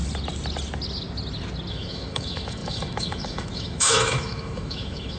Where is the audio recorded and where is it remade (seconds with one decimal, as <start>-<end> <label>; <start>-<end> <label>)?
0.0-1.7 recorded; 1.7-5.2 remade